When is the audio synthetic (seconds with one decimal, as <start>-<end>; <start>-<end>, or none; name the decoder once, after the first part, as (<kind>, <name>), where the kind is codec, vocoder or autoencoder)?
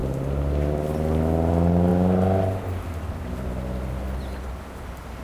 none